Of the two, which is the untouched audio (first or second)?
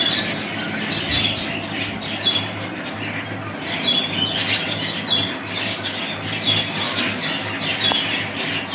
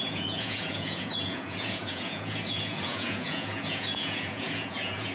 first